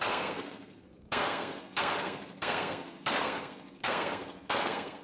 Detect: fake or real fake